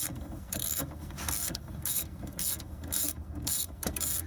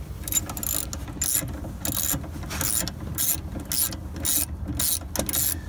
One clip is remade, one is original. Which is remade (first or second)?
first